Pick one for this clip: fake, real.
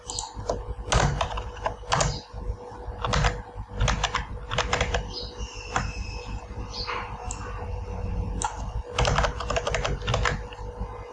real